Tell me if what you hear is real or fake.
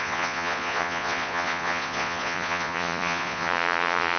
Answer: fake